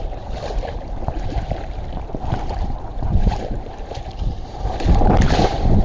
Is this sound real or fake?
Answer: fake